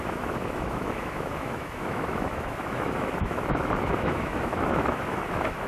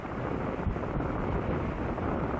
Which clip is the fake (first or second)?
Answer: first